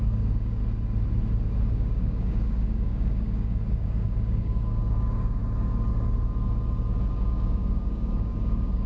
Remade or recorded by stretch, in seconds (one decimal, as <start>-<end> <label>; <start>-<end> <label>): 0.0-0.6 remade; 0.6-1.7 recorded; 1.7-5.4 remade; 5.4-7.1 recorded; 7.1-8.9 remade